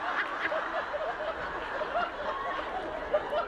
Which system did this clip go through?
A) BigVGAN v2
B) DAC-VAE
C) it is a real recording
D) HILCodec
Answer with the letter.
C